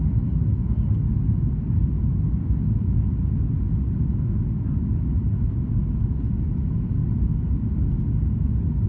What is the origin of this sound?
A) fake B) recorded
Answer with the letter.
B